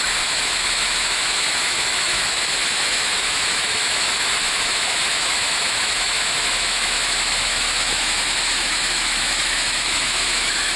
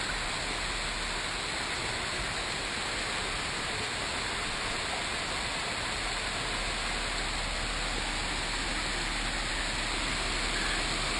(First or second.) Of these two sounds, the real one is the second